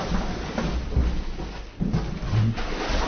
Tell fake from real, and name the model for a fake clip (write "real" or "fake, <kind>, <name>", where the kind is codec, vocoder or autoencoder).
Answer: real